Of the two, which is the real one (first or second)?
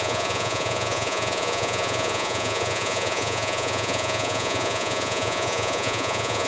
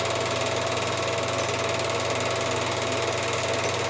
second